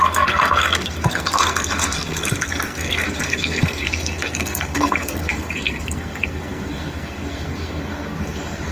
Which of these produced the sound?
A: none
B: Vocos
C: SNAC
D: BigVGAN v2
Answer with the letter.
C